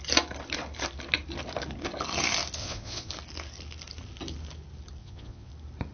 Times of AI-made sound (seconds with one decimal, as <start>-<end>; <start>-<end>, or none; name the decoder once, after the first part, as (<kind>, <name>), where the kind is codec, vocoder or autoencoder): 2.6-3.1 (vocoder, Vocos); 5.0-5.5